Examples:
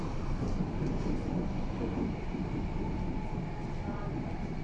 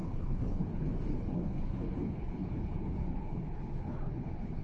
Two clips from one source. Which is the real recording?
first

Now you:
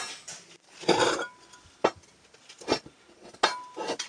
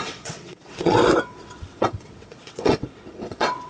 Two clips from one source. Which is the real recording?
first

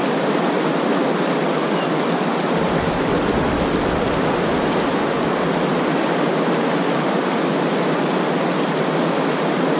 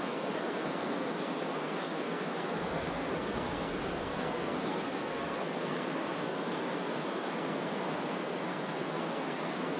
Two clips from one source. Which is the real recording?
first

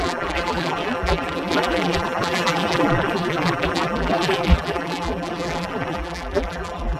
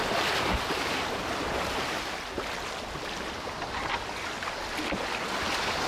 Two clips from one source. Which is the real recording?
second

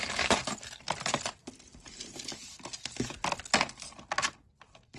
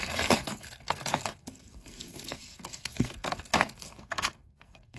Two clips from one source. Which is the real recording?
first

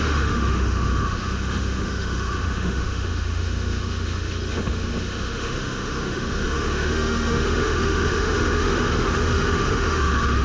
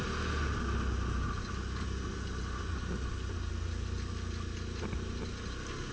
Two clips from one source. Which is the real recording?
second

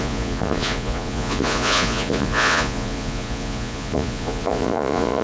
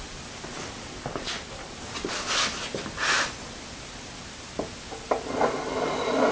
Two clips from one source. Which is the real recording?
second